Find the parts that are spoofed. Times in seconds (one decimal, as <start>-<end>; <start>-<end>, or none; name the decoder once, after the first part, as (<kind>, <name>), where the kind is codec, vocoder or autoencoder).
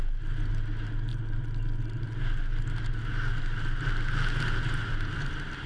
none